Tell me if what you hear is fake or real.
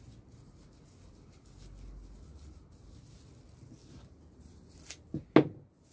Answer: real